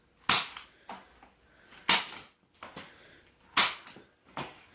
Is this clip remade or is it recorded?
recorded